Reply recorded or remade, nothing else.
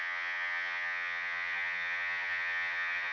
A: remade